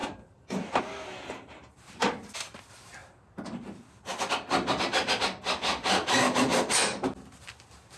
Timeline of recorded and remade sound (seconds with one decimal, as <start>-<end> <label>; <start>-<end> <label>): 0.0-8.0 recorded